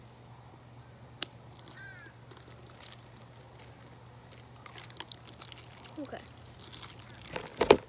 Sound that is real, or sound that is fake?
real